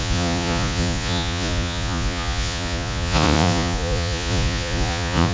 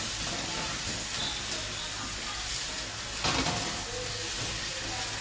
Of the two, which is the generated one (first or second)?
first